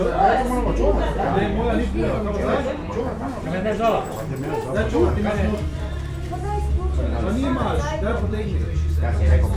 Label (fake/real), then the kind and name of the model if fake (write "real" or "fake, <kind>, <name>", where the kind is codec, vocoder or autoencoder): real